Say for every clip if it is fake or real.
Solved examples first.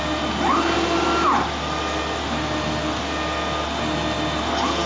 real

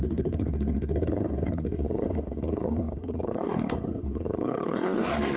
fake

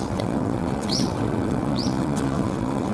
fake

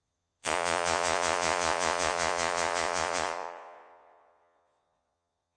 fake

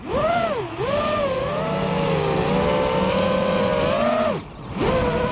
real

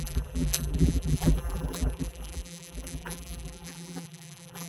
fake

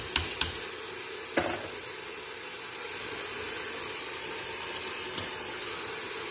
real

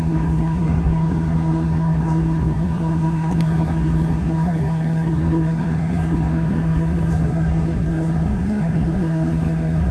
fake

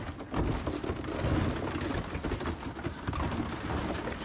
real